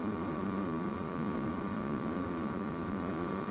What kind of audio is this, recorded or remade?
remade